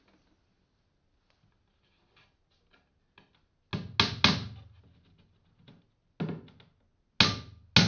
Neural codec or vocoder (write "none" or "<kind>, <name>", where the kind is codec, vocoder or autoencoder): none